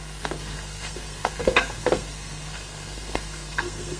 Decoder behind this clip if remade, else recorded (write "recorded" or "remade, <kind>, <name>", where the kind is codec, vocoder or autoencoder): remade, codec, SNAC